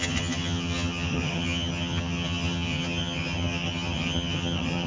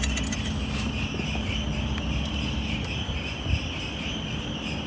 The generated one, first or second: first